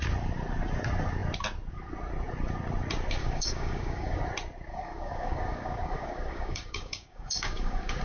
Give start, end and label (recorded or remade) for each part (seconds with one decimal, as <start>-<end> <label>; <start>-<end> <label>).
0.0-3.2 recorded; 3.2-4.2 remade; 4.2-4.7 recorded; 4.7-8.0 remade